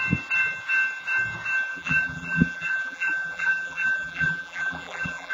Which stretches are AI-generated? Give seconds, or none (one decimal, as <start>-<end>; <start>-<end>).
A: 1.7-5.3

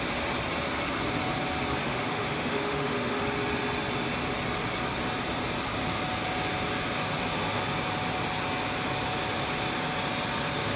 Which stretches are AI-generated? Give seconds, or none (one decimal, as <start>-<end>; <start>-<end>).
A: 1.8-3.2

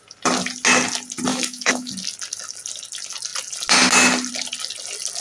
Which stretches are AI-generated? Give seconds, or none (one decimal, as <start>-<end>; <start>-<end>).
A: 1.3-1.9

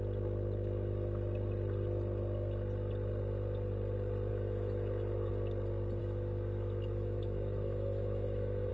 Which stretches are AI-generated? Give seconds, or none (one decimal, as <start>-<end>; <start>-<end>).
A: 4.3-5.3; 6.0-8.7

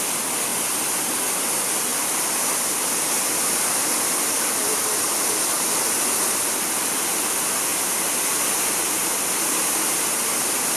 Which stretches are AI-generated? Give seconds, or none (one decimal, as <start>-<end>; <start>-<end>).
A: none

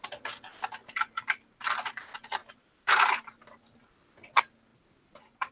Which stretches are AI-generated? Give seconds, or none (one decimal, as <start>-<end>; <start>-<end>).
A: 2.4-3.6; 4.7-5.5